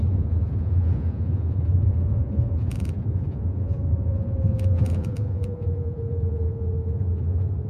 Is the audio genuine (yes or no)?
no